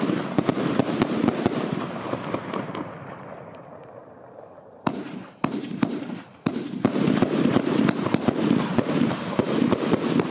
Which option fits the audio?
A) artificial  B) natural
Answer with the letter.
A